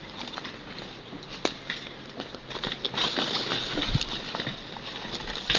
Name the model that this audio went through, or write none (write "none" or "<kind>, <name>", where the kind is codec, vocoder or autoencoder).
none